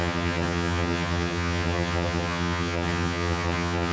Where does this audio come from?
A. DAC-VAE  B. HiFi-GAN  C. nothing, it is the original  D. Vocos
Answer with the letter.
B